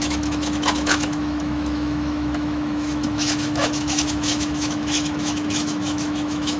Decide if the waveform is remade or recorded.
remade